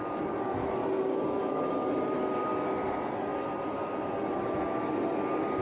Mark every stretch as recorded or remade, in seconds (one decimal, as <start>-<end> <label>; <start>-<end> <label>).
0.0-0.8 recorded; 0.8-1.7 remade; 1.7-5.6 recorded